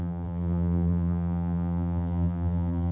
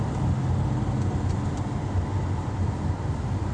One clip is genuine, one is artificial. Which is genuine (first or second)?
second